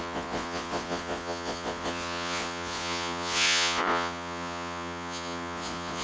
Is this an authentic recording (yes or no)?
no